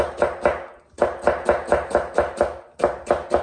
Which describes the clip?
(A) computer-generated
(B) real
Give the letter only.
B